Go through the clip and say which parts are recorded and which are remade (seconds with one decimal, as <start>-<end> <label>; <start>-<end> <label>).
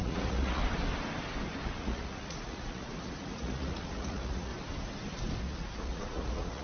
0.0-0.6 remade; 0.6-1.8 recorded; 1.8-4.5 remade; 4.5-5.4 recorded; 5.4-6.6 remade